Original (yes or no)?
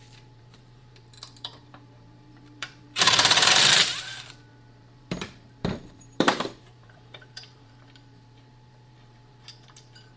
no